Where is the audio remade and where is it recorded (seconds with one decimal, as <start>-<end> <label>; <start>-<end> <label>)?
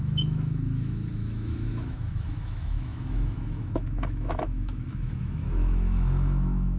0.0-6.8 remade